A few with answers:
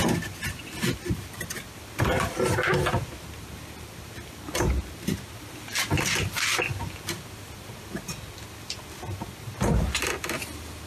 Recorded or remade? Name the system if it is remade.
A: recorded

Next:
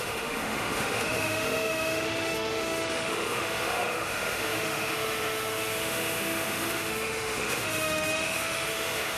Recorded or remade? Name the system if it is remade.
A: remade, autoencoder, DAC-VAE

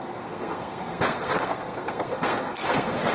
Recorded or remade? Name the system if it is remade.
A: remade, codec, SNAC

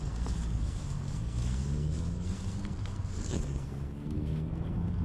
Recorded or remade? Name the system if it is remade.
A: remade, codec, SNAC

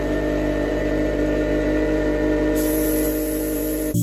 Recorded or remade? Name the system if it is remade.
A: remade, vocoder, BigVGAN v2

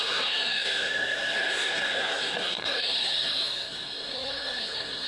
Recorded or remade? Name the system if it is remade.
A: remade, codec, SNAC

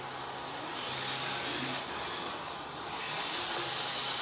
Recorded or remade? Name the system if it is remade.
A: recorded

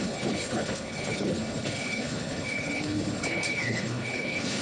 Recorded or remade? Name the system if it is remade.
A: remade, codec, HILCodec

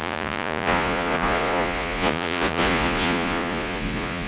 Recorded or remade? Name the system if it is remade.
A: remade, vocoder, Vocos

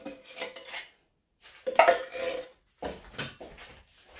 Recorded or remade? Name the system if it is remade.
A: recorded